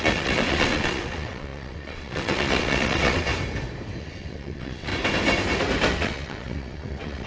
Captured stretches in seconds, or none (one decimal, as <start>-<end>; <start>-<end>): 3.3-4.0; 4.9-5.9